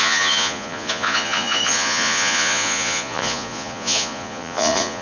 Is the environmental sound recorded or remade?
remade